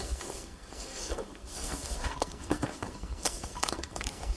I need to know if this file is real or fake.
fake